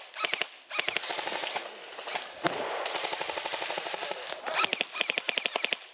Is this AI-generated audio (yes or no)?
no